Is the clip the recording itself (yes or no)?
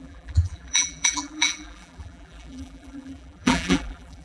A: no